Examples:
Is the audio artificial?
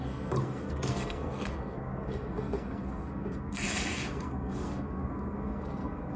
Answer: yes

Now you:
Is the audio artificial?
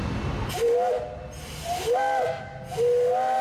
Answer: no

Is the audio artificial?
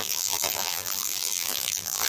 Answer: yes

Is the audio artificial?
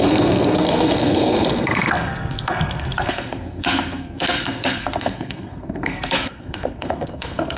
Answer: yes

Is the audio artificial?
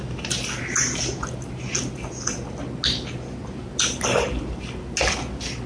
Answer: no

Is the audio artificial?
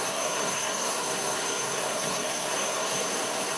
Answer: yes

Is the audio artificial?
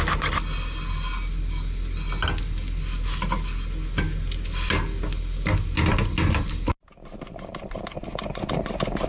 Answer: no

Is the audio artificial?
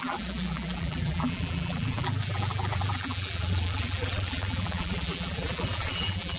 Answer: yes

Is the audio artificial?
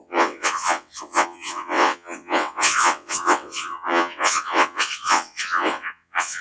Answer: yes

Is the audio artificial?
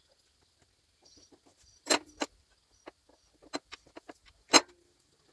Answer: no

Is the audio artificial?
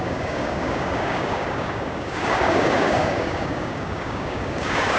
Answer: yes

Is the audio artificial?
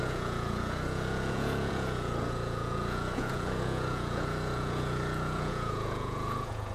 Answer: yes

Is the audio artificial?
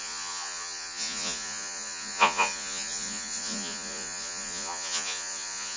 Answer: yes